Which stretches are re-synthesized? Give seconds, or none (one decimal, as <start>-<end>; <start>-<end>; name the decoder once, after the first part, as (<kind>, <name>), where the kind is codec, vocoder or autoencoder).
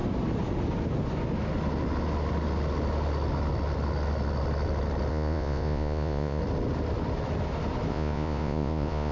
5.1-6.4 (vocoder, Vocos); 7.9-9.1